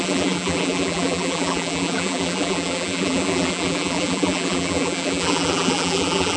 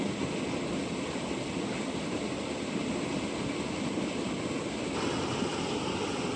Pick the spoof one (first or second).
first